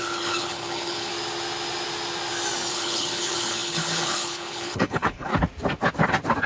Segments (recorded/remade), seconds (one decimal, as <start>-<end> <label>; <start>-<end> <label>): 0.0-1.1 remade; 1.1-2.7 recorded; 2.7-5.3 remade; 5.3-6.5 recorded